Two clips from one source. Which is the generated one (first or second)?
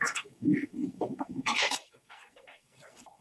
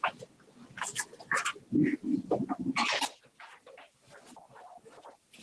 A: first